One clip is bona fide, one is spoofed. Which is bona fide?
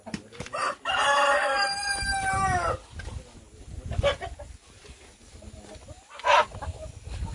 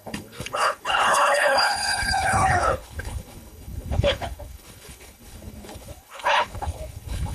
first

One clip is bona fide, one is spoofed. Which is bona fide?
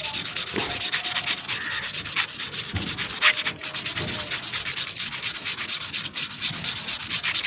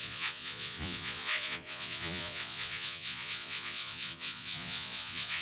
first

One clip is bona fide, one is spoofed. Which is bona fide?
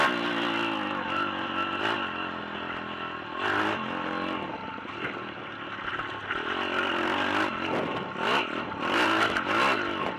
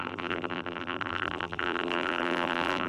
first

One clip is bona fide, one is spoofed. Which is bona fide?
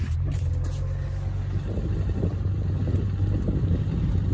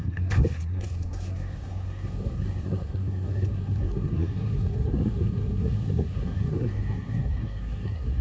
first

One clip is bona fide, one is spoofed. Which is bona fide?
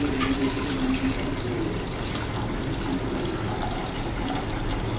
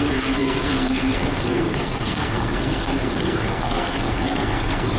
first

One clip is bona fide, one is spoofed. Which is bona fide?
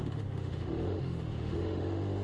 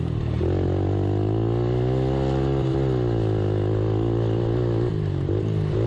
second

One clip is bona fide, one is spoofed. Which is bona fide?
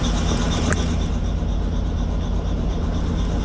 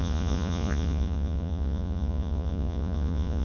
first